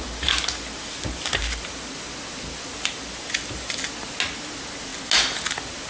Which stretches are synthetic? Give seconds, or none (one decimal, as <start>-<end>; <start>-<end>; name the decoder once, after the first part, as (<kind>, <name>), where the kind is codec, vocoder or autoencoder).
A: none